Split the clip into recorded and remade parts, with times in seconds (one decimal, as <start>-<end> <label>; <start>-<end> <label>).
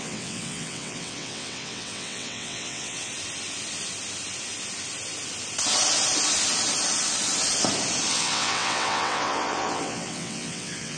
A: 0.0-3.1 remade; 3.1-8.1 recorded; 8.1-11.0 remade